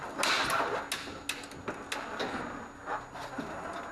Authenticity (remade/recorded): recorded